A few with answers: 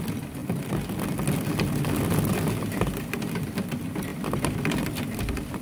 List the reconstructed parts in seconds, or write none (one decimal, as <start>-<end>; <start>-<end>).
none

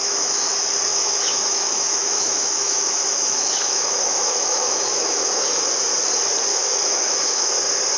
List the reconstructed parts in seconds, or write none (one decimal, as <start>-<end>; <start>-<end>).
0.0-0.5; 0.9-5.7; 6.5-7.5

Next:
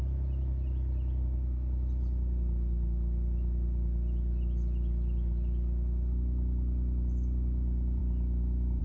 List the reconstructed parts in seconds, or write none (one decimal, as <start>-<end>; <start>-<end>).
none

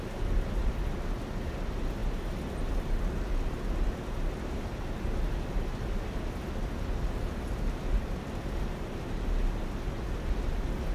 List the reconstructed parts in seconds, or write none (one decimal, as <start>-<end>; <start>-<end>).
none